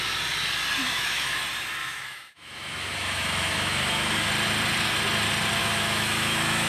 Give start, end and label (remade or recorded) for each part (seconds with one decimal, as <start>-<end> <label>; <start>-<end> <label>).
0.0-0.8 recorded; 0.8-1.4 remade; 1.4-1.8 recorded; 1.8-4.3 remade; 4.3-5.6 recorded; 5.6-6.7 remade